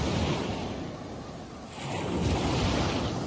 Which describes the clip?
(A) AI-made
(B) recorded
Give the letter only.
B